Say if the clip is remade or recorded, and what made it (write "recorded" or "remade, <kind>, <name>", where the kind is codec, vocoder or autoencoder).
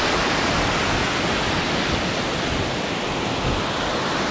recorded